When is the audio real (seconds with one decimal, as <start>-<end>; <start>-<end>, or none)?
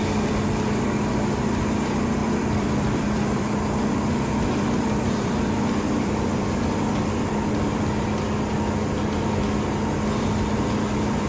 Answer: 0.0-2.2; 7.3-11.3